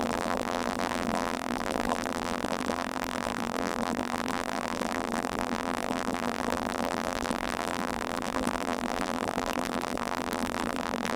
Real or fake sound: fake